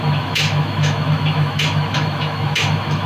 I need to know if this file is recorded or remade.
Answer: remade